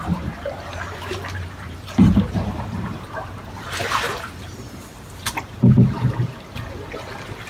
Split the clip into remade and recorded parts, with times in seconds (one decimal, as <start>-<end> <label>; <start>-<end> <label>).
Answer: 0.0-6.5 remade; 6.5-7.5 recorded